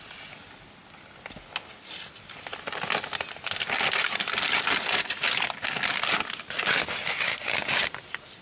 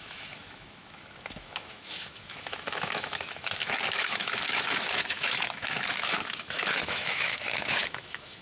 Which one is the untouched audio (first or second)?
first